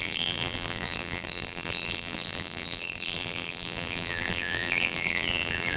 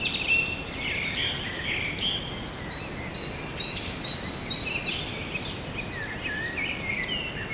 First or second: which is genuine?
second